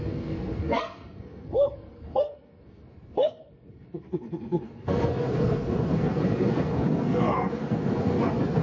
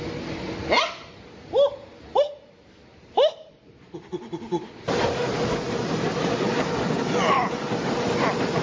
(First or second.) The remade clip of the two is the first